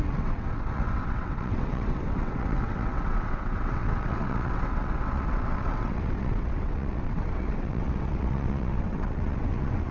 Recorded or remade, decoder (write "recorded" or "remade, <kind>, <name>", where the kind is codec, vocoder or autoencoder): remade, vocoder, WaveNeXt